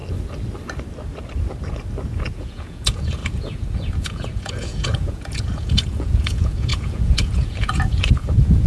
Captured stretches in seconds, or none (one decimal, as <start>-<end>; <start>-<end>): 0.0-2.3